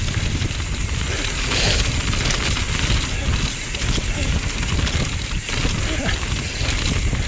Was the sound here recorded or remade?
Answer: recorded